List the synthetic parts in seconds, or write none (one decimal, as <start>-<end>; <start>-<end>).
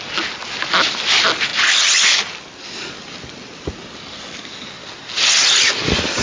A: none